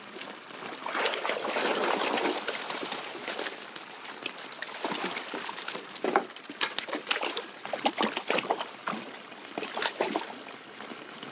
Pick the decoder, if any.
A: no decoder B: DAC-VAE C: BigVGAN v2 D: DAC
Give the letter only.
A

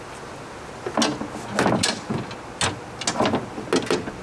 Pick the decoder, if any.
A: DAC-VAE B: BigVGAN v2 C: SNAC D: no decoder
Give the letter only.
D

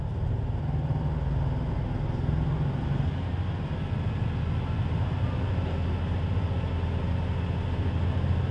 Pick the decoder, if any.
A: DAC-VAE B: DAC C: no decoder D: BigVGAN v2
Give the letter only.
C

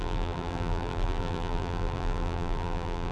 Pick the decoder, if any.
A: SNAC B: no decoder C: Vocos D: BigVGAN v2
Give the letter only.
D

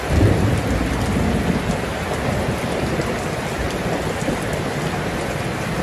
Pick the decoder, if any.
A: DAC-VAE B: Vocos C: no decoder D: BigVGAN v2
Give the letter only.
C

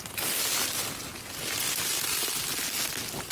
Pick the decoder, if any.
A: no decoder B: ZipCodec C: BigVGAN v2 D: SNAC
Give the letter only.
A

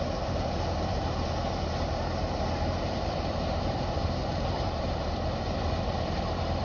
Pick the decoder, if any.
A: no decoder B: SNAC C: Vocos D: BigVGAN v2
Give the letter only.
D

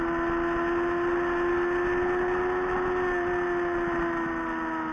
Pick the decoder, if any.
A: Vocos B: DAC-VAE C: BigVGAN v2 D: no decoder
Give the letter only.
D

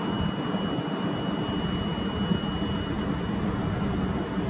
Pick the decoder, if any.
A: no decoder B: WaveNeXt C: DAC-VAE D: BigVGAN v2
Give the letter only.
A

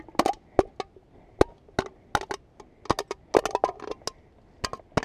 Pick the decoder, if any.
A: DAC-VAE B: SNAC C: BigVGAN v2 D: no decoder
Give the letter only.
D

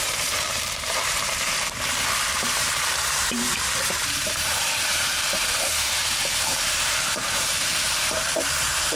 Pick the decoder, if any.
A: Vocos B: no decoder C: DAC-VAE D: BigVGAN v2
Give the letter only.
D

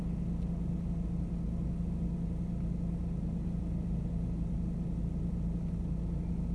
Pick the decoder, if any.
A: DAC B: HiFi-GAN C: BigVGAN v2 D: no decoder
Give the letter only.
D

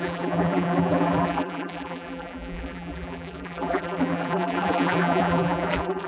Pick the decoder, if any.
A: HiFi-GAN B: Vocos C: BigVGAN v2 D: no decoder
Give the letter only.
C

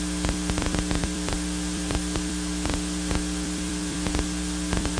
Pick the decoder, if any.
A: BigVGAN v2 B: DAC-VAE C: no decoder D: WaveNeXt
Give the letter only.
A